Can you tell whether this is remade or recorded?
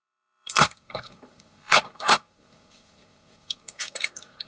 remade